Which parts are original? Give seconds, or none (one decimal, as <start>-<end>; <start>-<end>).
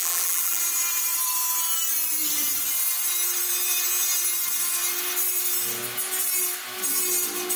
0.6-7.6